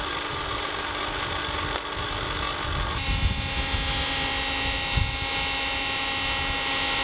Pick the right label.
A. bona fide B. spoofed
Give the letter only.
A